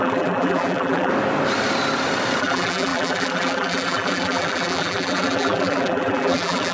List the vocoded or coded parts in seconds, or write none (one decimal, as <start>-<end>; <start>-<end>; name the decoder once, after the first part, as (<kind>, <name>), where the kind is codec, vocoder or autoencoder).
0.0-1.1 (vocoder, BigVGAN v2); 2.4-6.7